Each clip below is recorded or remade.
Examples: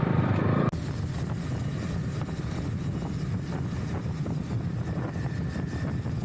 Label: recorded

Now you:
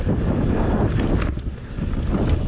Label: recorded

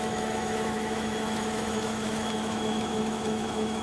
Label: remade